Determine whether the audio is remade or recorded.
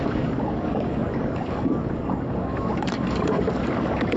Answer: remade